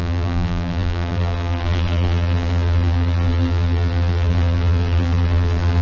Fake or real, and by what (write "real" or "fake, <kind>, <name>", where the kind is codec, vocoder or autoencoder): fake, vocoder, BigVGAN v2